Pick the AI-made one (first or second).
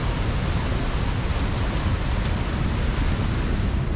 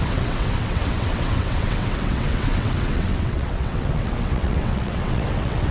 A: second